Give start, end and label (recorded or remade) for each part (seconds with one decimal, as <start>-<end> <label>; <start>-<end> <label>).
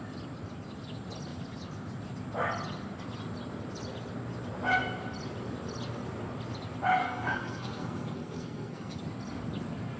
0.0-7.0 recorded; 7.0-9.0 remade; 9.0-10.0 recorded